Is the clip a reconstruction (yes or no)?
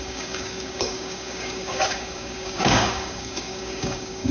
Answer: yes